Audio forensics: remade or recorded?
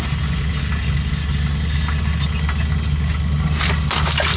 recorded